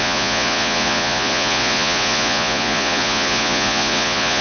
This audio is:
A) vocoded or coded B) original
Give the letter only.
A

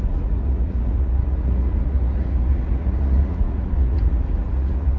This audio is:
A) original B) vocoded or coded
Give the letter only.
B